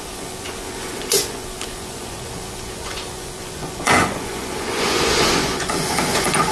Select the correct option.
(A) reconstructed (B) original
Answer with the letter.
A